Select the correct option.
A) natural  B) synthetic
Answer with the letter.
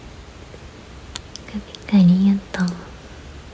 A